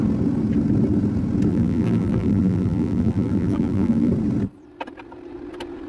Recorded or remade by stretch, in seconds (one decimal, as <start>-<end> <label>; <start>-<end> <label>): 0.0-1.5 recorded; 1.5-4.1 remade; 4.1-5.9 recorded